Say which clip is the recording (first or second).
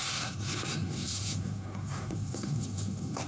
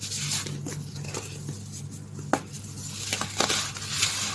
second